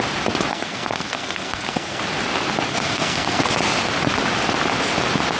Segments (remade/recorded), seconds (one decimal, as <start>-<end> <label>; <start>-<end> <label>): 0.0-0.5 recorded; 0.5-2.0 remade; 2.0-2.7 recorded; 2.7-3.4 remade; 3.4-5.4 recorded